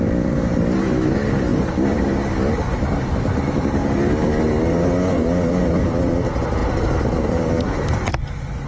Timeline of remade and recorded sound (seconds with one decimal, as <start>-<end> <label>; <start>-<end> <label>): 0.0-1.5 recorded; 1.5-2.0 remade; 2.0-6.6 recorded; 6.6-7.5 remade; 7.5-8.7 recorded